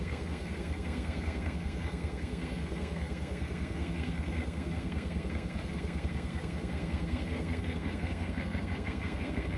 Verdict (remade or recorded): remade